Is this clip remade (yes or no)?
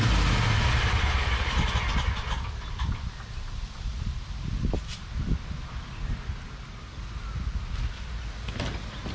no